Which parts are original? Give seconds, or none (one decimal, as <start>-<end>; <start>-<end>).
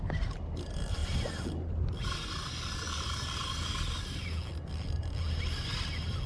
0.0-6.3